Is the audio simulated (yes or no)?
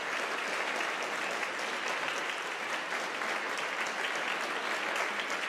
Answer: no